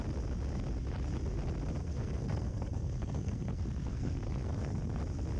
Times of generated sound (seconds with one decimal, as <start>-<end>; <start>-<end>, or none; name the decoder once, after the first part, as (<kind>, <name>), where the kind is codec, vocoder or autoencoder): 1.8-5.0 (codec, SNAC)